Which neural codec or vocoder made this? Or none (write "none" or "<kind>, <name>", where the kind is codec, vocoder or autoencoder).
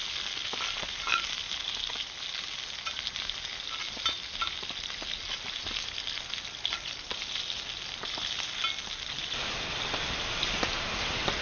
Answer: none